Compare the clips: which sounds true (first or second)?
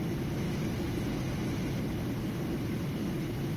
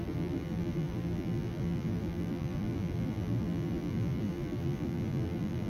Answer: first